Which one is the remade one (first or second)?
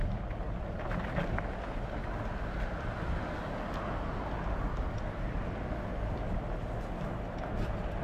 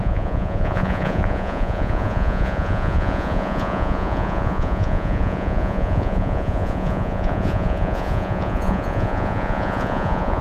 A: second